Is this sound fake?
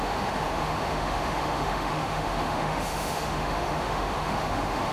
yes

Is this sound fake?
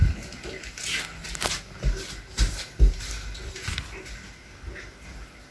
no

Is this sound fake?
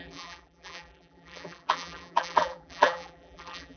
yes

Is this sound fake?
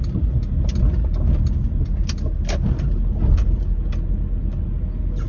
no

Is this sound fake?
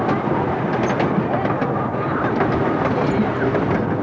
no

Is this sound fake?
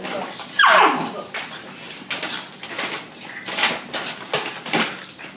no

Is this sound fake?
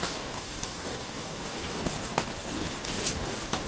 yes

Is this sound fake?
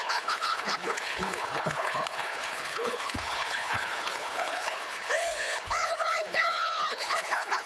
yes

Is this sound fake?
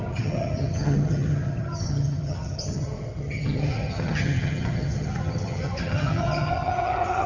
yes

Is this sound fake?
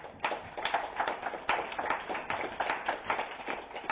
no